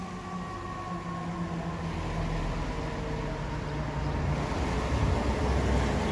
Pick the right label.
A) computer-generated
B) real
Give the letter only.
B